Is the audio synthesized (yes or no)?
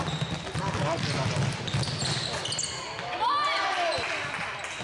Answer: no